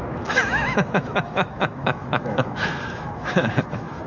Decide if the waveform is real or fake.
fake